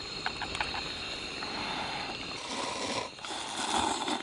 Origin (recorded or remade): recorded